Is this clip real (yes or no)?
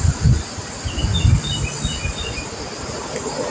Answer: yes